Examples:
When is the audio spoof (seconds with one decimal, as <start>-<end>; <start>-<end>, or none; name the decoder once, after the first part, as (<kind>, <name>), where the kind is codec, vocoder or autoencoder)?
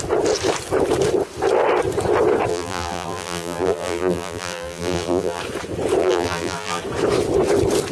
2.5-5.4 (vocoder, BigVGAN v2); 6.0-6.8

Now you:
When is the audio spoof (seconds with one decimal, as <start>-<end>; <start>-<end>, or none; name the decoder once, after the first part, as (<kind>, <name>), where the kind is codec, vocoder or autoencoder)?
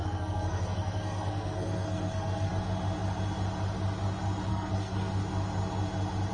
0.0-2.5 (codec, SNAC); 4.5-5.1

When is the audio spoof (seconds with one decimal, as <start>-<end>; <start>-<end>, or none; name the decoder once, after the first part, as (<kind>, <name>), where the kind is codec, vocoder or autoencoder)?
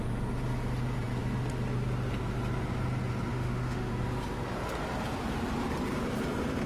3.3-3.9 (autoencoder, DAC-VAE)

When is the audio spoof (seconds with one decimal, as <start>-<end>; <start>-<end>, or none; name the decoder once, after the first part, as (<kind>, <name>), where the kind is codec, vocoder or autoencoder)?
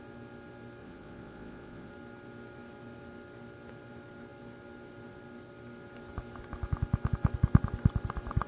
0.8-1.9 (vocoder, Vocos)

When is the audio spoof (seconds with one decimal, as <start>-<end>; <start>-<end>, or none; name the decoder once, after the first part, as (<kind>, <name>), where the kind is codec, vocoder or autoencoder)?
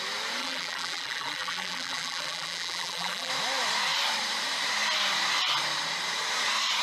0.4-3.3 (vocoder, BigVGAN v2)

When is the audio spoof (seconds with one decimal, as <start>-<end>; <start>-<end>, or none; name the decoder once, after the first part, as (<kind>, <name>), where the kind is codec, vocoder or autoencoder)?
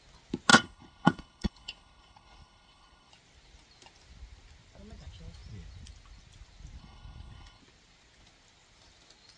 0.5-3.1 (codec, HILCodec); 6.8-7.6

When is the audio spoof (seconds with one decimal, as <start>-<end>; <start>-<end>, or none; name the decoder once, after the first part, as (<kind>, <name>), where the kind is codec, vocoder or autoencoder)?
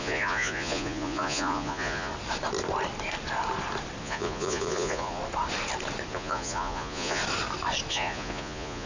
0.0-2.1 (vocoder, Vocos); 4.0-5.2; 6.1-7.2; 7.9-8.9